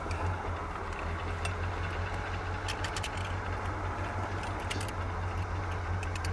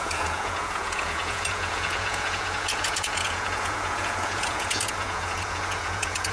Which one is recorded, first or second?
first